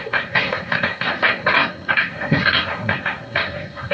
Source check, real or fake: fake